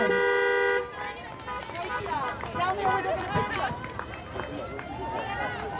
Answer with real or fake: real